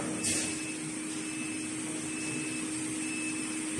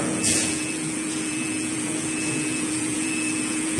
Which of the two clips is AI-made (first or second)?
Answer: second